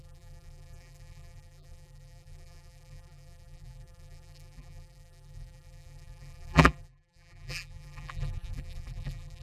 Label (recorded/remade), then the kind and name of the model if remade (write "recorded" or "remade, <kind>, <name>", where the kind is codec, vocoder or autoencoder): remade, vocoder, BigVGAN v2